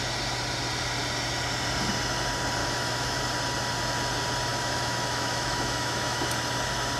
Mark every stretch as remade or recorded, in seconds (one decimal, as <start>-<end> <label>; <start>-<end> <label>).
0.0-2.6 recorded; 2.6-3.2 remade; 3.2-4.5 recorded; 4.5-6.3 remade; 6.3-7.0 recorded